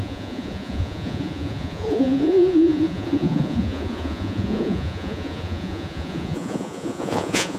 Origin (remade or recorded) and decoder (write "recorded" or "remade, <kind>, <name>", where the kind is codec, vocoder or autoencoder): remade, vocoder, Vocos